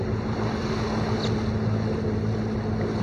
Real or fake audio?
real